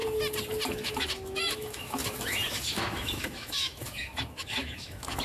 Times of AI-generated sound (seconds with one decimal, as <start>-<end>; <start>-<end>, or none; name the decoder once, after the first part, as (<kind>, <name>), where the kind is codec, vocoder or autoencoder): 0.7-5.2 (autoencoder, DAC-VAE)